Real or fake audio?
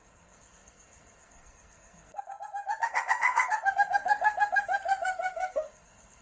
fake